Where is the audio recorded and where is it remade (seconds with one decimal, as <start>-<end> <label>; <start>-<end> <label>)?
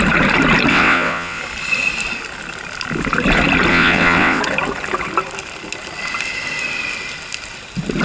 0.0-0.7 recorded; 0.7-1.4 remade; 1.4-3.7 recorded; 3.7-4.4 remade; 4.4-8.0 recorded